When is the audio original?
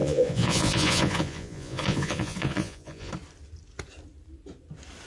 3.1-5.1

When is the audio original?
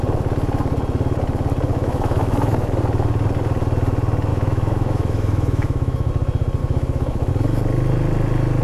0.0-1.7; 2.7-4.3; 6.1-6.6; 7.3-8.6